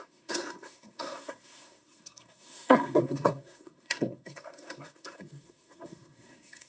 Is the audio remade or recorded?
remade